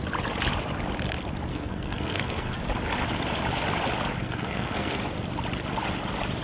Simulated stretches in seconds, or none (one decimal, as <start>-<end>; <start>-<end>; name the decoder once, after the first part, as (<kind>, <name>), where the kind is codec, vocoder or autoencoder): 1.5-2.6 (codec, SNAC); 4.2-5.0